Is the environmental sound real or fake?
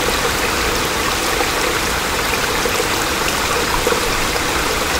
real